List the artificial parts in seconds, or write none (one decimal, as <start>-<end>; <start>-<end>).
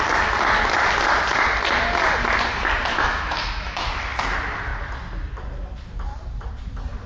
2.9-3.9